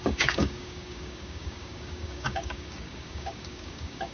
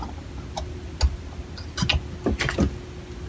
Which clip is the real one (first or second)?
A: second